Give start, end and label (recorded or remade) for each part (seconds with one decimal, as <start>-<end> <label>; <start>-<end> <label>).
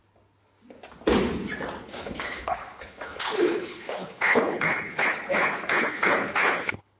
0.0-1.8 recorded; 1.8-7.0 remade